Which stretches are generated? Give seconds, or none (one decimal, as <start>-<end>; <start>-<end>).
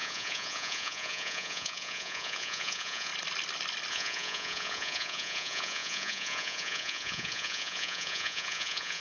0.0-3.1; 3.9-9.0